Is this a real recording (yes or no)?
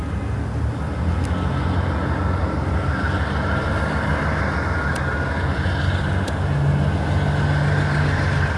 yes